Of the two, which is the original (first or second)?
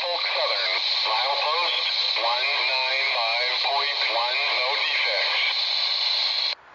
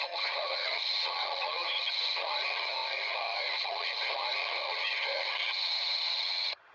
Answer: first